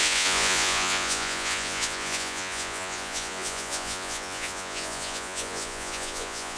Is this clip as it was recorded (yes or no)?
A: no